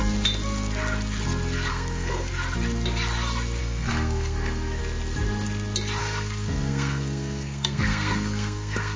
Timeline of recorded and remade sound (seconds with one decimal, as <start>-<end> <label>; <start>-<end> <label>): 0.0-1.7 recorded; 1.7-2.3 remade; 2.3-3.6 recorded; 3.6-4.8 remade; 4.8-6.0 recorded; 6.0-9.0 remade